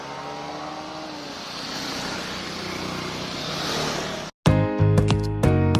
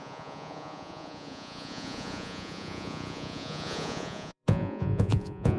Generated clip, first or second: second